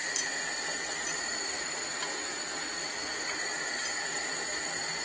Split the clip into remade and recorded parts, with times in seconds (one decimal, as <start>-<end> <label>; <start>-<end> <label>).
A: 0.0-1.4 recorded; 1.4-2.0 remade; 2.0-4.6 recorded; 4.6-5.0 remade